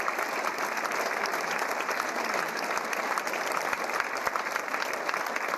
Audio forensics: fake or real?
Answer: real